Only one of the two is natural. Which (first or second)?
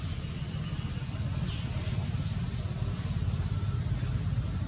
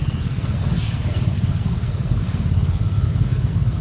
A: first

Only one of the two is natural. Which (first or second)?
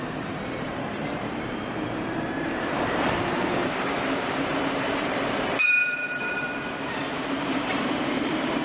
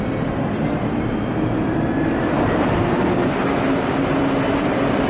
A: second